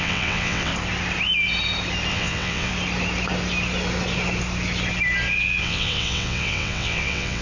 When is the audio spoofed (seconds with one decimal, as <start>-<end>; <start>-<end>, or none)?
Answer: 0.0-0.7; 2.1-2.7; 5.6-7.4